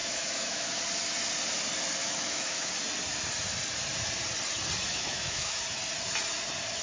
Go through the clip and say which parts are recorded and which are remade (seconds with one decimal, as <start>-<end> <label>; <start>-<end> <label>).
0.0-0.8 remade; 0.8-2.0 recorded; 2.0-2.7 remade; 2.7-4.9 recorded; 4.9-5.6 remade; 5.6-6.8 recorded